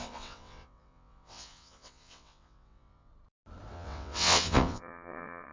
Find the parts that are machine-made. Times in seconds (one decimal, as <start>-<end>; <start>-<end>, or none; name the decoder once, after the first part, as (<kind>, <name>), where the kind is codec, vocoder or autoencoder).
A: 0.0-3.1 (vocoder, WaveNeXt); 3.7-5.5